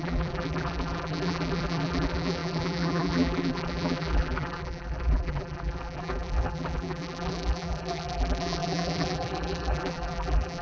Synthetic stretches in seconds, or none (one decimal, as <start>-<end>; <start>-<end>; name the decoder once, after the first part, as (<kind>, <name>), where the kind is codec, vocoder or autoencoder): 0.0-10.6 (vocoder, BigVGAN v2)